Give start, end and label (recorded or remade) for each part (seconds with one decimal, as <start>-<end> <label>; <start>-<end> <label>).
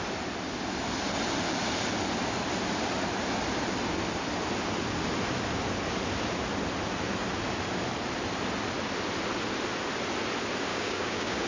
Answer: 0.0-10.7 recorded; 10.7-11.5 remade